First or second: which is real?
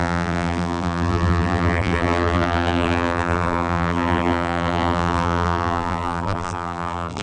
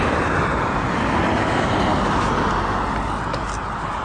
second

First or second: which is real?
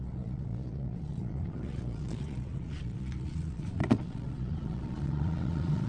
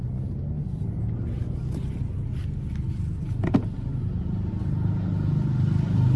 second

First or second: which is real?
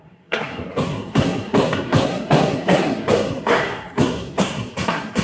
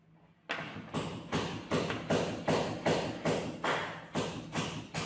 second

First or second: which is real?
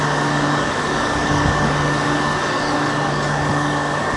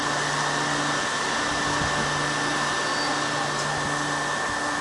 second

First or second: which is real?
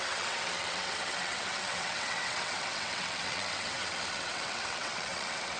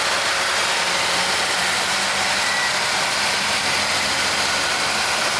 second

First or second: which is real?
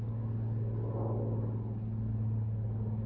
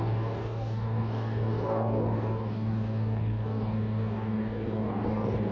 first